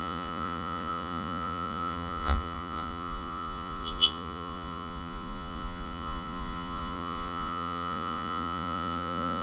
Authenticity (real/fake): fake